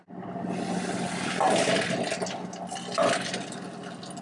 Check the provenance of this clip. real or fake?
real